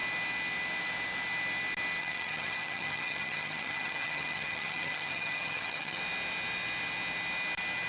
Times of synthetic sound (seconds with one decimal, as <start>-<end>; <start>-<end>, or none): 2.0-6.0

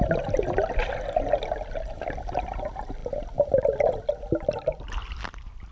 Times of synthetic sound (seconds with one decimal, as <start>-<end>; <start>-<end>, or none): none

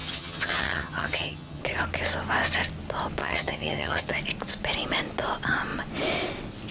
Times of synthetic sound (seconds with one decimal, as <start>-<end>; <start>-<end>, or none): 0.0-1.6; 3.2-4.2

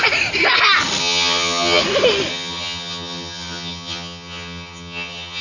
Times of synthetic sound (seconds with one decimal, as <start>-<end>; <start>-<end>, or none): 1.0-1.8; 2.3-5.4

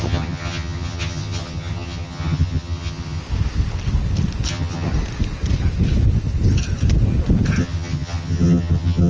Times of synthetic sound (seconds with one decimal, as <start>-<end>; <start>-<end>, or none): 0.0-3.2; 4.5-4.9; 7.6-9.1

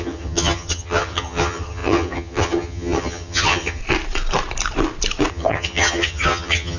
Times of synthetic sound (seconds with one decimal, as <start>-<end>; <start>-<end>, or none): 0.0-3.8; 5.3-6.8

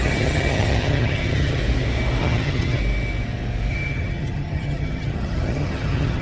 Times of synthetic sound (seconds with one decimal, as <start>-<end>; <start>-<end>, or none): 0.0-1.6; 2.2-2.8; 3.7-6.2

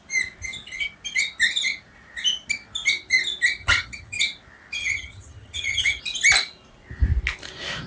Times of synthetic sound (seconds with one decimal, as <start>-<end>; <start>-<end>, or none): 3.6-4.2; 4.8-6.0